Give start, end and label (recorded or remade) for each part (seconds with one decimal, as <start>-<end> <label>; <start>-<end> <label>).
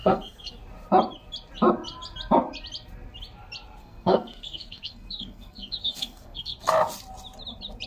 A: 0.0-0.5 remade; 0.5-3.8 recorded; 3.8-6.7 remade; 6.7-7.9 recorded